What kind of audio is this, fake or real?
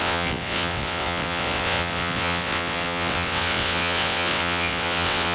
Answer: fake